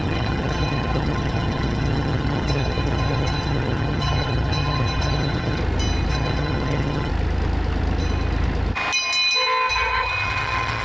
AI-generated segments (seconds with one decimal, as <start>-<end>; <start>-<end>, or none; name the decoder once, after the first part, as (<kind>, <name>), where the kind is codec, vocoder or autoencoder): 0.0-5.6 (vocoder, HiFi-GAN); 6.1-7.1; 9.7-10.8